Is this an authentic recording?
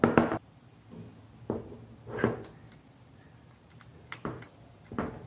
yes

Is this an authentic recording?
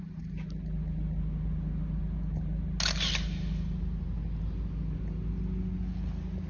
yes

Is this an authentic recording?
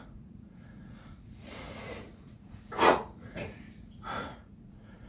no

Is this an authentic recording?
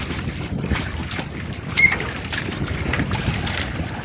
yes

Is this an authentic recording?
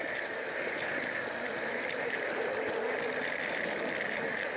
yes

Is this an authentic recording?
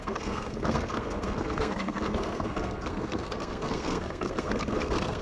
no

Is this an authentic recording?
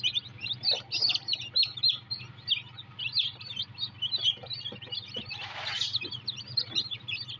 yes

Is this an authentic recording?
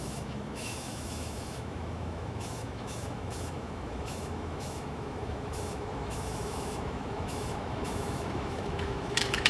no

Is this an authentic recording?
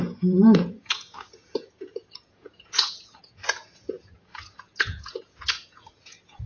no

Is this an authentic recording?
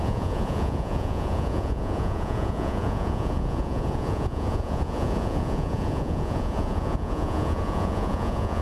no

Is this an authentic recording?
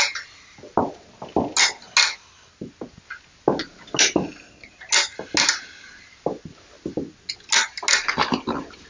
yes